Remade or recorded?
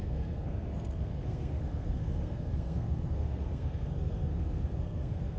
remade